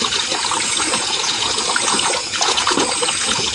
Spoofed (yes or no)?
yes